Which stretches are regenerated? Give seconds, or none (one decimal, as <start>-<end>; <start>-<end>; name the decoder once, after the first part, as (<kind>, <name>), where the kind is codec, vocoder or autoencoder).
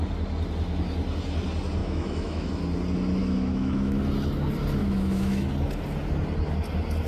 1.8-2.5 (autoencoder, DAC-VAE); 3.2-4.0; 4.8-5.5